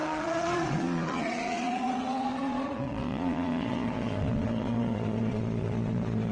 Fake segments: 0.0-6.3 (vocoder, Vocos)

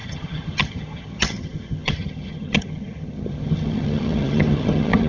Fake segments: 0.0-5.1 (vocoder, HiFi-GAN)

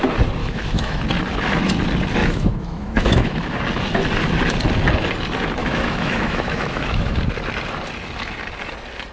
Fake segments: 0.4-1.0 (autoencoder, DAC-VAE); 2.2-3.6; 5.6-7.2

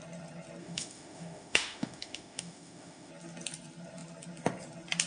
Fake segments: 0.6-3.1 (autoencoder, DAC-VAE)

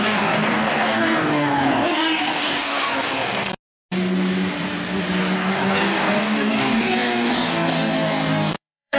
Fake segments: 0.0-3.5 (codec, DAC); 5.5-9.0